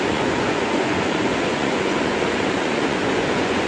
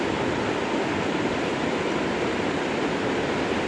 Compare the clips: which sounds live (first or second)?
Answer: second